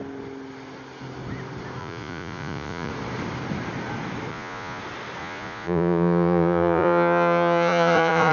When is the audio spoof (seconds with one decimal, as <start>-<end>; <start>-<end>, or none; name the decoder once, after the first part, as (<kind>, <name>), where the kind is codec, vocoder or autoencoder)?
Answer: 1.8-2.9 (vocoder, Vocos); 4.3-4.8; 5.2-8.3